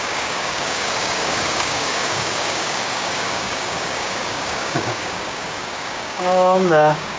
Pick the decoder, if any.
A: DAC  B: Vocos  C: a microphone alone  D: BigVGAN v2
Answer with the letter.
A